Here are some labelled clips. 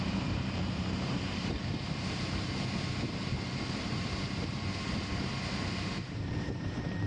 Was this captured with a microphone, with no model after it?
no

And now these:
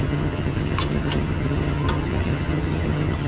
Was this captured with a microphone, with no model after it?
no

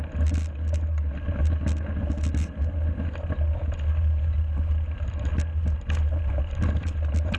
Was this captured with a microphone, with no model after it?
yes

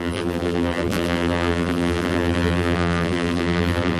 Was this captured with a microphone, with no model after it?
no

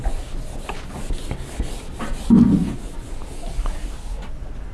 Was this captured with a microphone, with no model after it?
yes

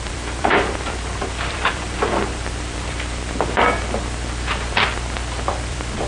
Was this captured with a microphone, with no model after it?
no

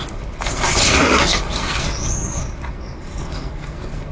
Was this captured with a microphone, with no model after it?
no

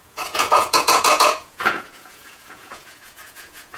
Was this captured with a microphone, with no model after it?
no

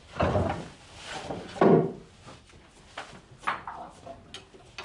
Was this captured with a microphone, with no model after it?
yes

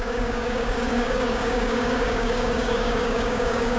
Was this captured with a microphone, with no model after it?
no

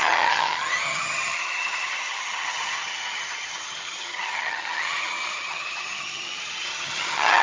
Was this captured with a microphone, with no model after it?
no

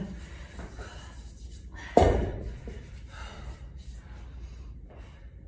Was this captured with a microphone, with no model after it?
yes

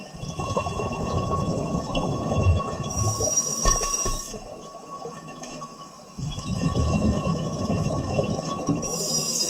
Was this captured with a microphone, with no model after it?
no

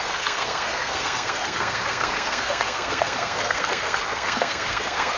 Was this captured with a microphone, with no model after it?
no